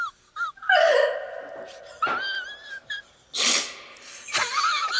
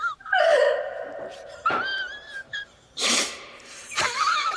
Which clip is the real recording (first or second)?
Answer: first